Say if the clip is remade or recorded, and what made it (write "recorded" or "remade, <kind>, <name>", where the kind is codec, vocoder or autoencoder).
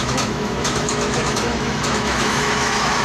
remade, autoencoder, DAC-VAE